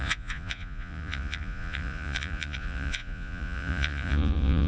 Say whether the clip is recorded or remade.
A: remade